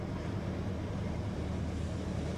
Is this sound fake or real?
real